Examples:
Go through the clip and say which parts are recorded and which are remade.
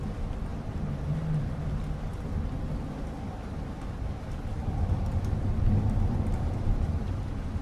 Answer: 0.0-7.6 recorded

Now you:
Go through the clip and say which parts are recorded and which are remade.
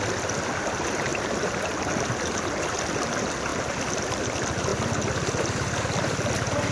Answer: 0.0-6.7 recorded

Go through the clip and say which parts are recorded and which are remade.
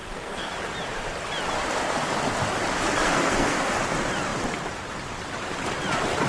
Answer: 0.0-0.5 remade; 0.5-3.0 recorded; 3.0-3.7 remade; 3.7-6.3 recorded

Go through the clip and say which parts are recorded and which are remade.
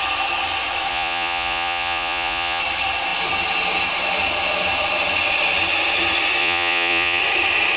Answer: 0.0-0.9 recorded; 0.9-2.6 remade; 2.6-6.4 recorded; 6.4-7.2 remade; 7.2-7.8 recorded